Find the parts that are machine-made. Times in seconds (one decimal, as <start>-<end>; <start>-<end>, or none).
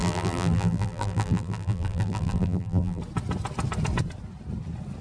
0.0-3.0